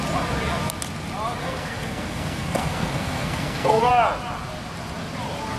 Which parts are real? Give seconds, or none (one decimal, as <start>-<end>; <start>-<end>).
0.0-1.4; 3.9-5.6